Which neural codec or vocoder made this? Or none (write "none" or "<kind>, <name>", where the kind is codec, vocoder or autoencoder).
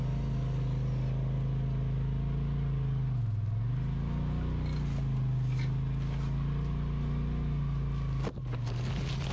none